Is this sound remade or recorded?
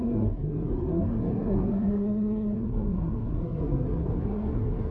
remade